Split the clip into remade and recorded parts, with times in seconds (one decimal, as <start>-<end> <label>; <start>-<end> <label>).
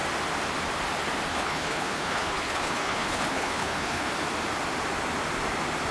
0.0-1.3 recorded; 1.3-4.1 remade; 4.1-5.9 recorded